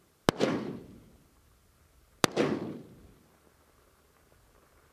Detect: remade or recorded recorded